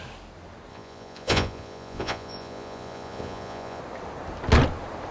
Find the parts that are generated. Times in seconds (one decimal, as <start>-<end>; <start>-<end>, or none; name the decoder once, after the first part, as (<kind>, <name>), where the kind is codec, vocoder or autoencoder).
0.7-3.8 (vocoder, Vocos)